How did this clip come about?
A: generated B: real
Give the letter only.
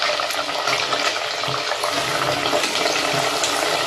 B